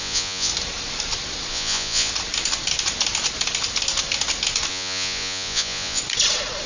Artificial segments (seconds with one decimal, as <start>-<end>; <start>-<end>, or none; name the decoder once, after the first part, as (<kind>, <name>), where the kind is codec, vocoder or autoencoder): 0.0-0.5 (vocoder, Vocos); 1.5-2.1; 4.7-6.0